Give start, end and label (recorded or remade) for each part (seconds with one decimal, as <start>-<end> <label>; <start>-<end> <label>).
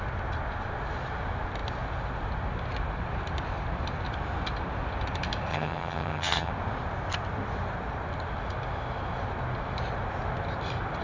0.0-5.5 recorded; 5.5-6.5 remade; 6.5-11.0 recorded